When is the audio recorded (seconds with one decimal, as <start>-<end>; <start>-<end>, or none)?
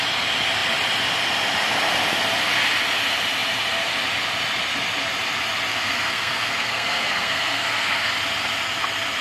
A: 0.0-5.7; 8.1-9.2